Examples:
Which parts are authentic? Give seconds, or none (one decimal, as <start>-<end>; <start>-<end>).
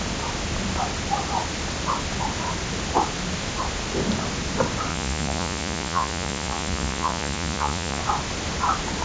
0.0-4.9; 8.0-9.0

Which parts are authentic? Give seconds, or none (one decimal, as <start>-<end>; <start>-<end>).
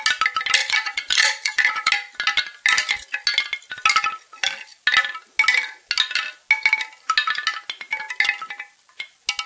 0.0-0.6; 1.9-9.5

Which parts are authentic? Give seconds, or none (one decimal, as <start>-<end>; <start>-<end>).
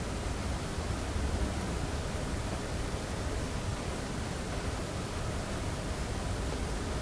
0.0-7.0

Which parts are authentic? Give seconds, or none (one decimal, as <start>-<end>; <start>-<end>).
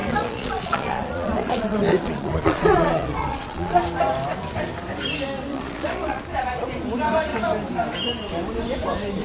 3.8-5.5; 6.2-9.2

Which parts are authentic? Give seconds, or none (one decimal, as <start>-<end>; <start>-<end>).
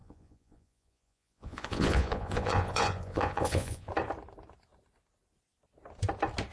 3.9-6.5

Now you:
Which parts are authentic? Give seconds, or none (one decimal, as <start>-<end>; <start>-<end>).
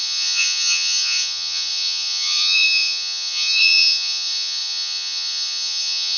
none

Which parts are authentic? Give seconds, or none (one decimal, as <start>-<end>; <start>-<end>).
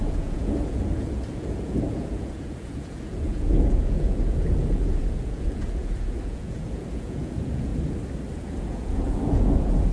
7.7-8.3